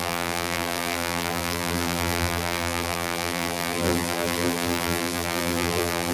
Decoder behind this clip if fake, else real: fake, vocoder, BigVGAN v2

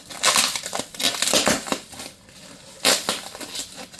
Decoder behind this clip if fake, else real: real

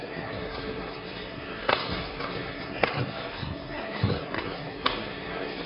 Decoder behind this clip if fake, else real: fake, codec, SNAC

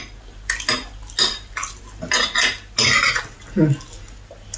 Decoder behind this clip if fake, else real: real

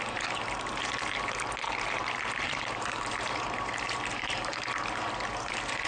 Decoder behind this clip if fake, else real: fake, vocoder, BigVGAN v2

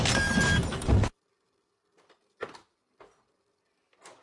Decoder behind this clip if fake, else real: real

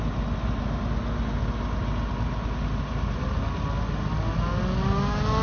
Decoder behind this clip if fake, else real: real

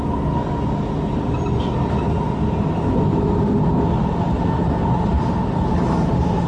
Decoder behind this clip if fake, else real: real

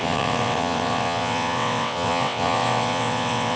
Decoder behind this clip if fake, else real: fake, vocoder, WaveNeXt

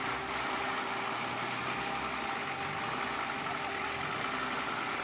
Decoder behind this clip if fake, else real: real